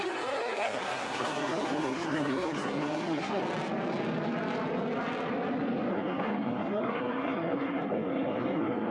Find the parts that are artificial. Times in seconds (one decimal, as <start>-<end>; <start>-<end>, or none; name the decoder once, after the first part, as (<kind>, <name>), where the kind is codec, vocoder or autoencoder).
0.0-3.4 (codec, SNAC); 5.9-8.9